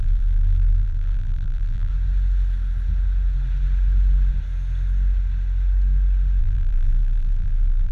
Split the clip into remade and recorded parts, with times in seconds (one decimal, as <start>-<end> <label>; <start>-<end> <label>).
0.0-1.9 remade; 1.9-6.4 recorded; 6.4-7.9 remade